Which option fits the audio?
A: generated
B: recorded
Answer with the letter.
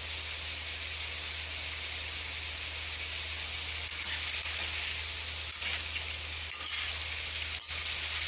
B